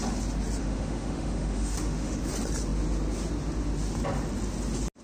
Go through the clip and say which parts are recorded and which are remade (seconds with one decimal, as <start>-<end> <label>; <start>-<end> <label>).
0.0-0.6 recorded; 0.6-2.3 remade; 2.3-5.0 recorded